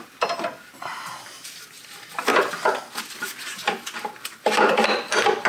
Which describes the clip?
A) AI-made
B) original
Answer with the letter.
B